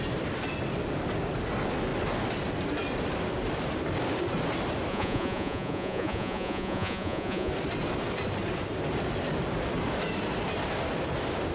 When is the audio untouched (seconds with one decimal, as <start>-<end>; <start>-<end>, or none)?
0.0-4.9; 7.5-11.5